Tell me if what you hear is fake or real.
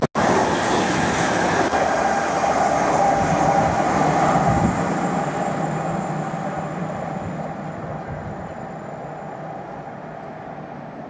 real